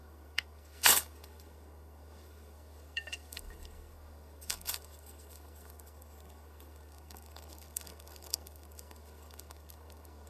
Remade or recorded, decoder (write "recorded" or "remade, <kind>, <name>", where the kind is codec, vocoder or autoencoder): remade, codec, SNAC